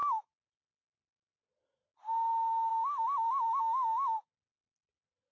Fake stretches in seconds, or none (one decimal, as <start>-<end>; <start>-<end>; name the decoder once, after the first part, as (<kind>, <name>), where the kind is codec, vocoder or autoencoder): 2.7-3.6 (vocoder, BigVGAN v2)